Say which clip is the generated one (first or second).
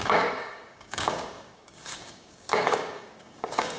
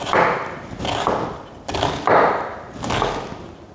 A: first